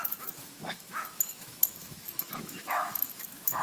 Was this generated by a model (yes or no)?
yes